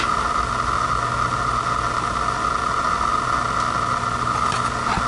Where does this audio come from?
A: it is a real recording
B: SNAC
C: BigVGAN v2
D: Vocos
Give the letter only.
A